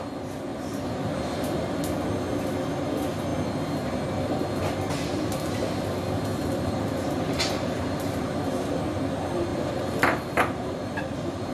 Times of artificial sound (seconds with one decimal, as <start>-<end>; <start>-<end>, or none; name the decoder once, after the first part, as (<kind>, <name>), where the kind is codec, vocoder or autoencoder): 0.5-1.8 (vocoder, BigVGAN v2); 6.3-8.2; 9.5-11.0